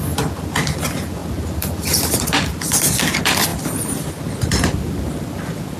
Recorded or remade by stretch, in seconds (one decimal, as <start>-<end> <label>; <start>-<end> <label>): 0.0-1.2 recorded; 1.2-2.2 remade; 2.2-3.5 recorded; 3.5-4.1 remade; 4.1-5.8 recorded